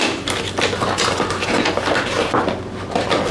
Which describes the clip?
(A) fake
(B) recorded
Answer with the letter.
B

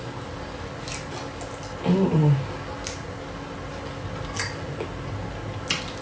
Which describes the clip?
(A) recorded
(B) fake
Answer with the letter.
A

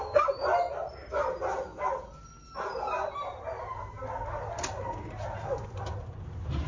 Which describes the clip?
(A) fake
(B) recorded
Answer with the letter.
B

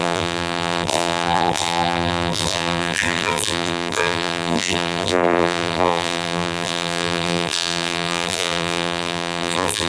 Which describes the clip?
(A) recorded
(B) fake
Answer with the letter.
B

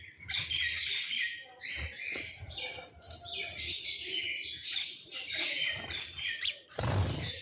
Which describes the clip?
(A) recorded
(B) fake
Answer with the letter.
B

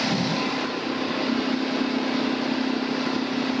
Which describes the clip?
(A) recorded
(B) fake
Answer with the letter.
A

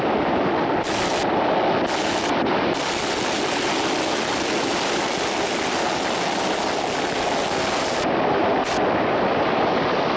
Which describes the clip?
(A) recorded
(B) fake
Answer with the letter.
A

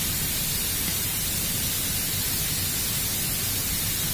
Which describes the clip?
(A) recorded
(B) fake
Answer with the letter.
A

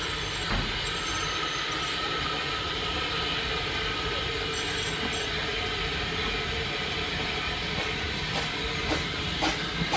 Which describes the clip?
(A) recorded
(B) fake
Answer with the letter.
A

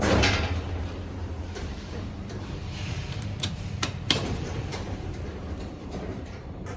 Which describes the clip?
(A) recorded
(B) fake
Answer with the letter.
B